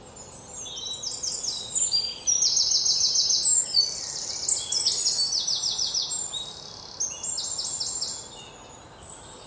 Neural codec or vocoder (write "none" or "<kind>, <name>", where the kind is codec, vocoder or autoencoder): none